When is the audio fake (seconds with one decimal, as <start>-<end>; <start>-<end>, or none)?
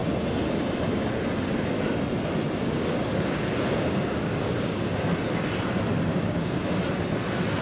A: 2.6-4.8; 6.1-6.8